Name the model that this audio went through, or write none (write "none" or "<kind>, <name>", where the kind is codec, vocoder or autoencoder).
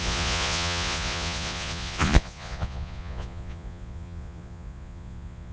vocoder, Vocos